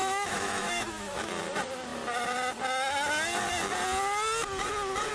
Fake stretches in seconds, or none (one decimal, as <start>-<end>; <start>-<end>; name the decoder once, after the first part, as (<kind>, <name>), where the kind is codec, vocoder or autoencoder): 0.0-1.3 (autoencoder, DAC-VAE)